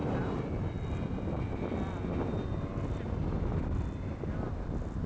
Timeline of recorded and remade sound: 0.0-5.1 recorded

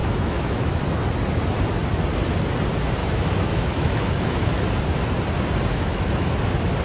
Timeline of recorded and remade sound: 0.0-0.8 remade; 0.8-3.0 recorded; 3.0-4.5 remade; 4.5-5.7 recorded; 5.7-6.3 remade; 6.3-6.8 recorded

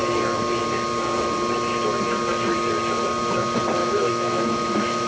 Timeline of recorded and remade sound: 0.0-3.8 recorded; 3.8-5.1 remade